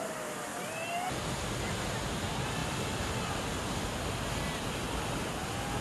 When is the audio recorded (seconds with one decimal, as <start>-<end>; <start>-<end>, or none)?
0.0-5.8